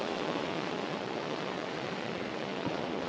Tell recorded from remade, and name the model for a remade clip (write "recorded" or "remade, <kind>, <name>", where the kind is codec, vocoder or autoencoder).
remade, vocoder, Vocos